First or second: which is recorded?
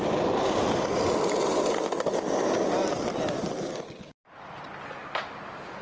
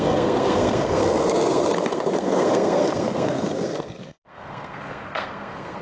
first